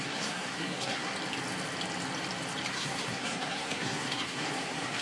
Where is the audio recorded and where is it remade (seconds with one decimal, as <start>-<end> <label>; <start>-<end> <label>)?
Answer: 0.0-1.1 remade; 1.1-2.7 recorded; 2.7-5.0 remade